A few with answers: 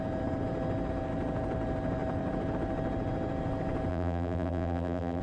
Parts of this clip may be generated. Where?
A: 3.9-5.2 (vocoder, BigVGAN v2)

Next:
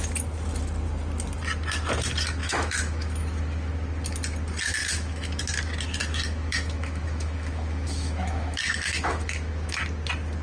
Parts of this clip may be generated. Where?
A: 2.4-3.7 (autoencoder, DAC-VAE); 4.8-5.4; 6.0-9.8

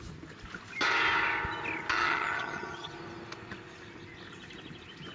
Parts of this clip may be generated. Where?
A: 1.9-2.9 (vocoder, HiFi-GAN)

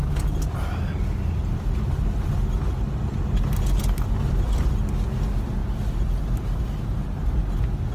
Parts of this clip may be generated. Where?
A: none

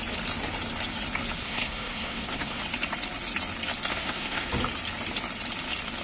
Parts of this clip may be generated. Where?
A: 1.4-2.6 (codec, SNAC); 3.9-4.5

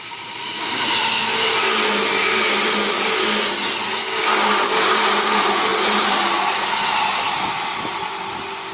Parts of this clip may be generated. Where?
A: none

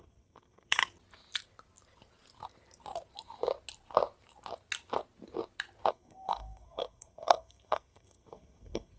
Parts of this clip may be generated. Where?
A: 0.0-0.8 (codec, SNAC); 5.9-9.0

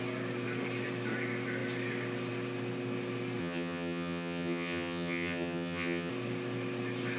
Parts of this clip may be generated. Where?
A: 3.4-6.1 (vocoder, HiFi-GAN)